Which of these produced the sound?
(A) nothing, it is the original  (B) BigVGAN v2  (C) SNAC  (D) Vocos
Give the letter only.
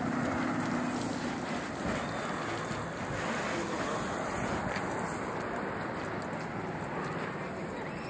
A